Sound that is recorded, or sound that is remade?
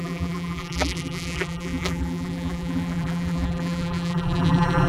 remade